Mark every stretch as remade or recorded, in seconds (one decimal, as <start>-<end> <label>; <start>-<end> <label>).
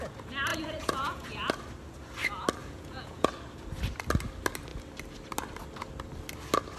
0.0-0.5 recorded; 0.5-1.5 remade; 1.5-2.6 recorded; 2.6-3.3 remade; 3.3-6.8 recorded